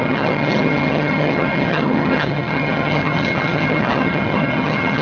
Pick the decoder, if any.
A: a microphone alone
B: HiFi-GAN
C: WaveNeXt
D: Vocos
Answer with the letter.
B